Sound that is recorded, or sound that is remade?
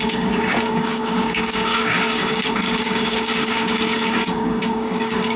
remade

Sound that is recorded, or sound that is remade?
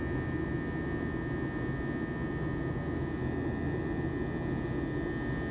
recorded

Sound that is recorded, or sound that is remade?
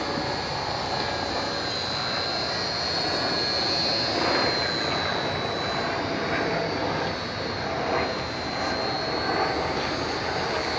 recorded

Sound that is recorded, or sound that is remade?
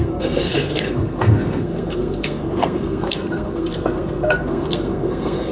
remade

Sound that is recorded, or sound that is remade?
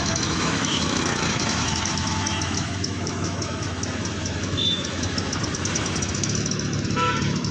remade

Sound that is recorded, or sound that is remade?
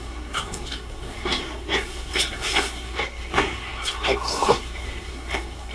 remade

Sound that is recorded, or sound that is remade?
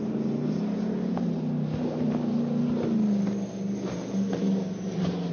recorded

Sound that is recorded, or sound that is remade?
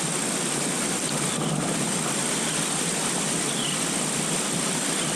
recorded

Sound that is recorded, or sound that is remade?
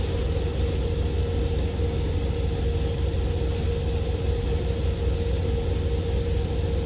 recorded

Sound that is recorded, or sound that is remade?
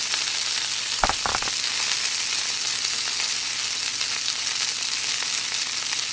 recorded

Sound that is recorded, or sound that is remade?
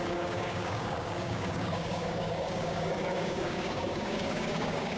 remade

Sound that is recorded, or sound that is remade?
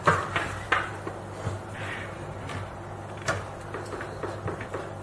recorded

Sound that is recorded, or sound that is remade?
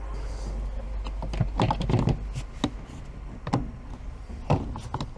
recorded